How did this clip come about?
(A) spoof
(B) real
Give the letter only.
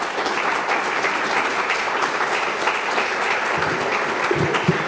B